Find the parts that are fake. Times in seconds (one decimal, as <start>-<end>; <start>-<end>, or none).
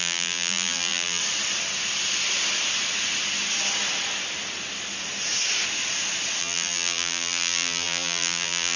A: 0.0-1.2; 6.4-8.8